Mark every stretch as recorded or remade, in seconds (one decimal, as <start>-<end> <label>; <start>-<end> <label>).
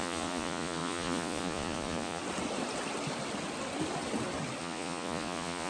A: 0.0-2.2 remade; 2.2-4.6 recorded; 4.6-5.7 remade